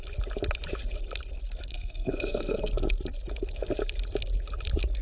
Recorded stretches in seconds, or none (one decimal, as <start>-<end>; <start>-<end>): 0.0-1.7; 2.7-5.0